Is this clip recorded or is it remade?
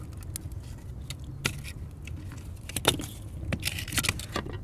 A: recorded